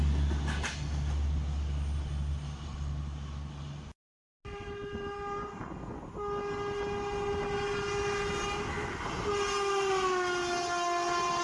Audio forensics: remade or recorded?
recorded